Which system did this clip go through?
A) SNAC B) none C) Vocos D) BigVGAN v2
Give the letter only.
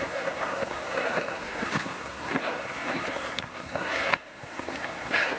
A